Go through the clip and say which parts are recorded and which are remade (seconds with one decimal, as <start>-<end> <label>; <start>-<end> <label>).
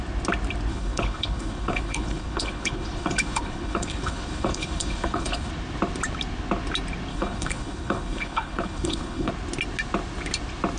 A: 0.0-0.7 recorded; 0.7-5.5 remade; 5.5-7.1 recorded; 7.1-9.3 remade; 9.3-10.8 recorded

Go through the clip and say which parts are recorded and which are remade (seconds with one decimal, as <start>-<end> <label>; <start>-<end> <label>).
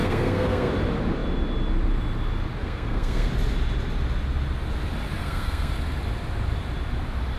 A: 0.0-0.7 remade; 0.7-2.6 recorded; 2.6-3.3 remade; 3.3-5.2 recorded; 5.2-5.7 remade; 5.7-7.4 recorded